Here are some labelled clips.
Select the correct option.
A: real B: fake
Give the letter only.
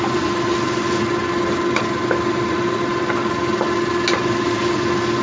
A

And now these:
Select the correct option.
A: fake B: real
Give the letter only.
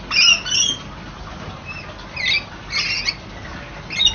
B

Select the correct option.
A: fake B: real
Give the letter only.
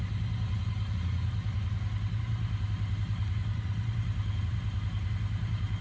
B